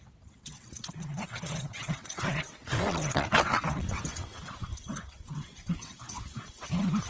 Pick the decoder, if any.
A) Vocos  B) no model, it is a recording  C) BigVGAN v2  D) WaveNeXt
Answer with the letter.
D